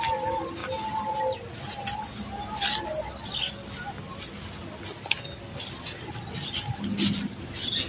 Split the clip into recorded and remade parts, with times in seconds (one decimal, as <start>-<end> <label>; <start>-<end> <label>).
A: 0.0-7.9 recorded